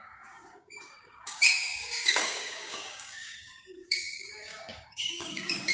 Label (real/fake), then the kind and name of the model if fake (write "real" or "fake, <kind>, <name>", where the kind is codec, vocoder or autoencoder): fake, codec, DAC